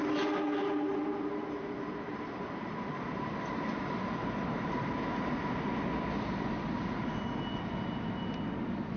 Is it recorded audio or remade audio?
recorded